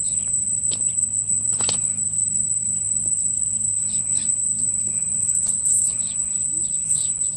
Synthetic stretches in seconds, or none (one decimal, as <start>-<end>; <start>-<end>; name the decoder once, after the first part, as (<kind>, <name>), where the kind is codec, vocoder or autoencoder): none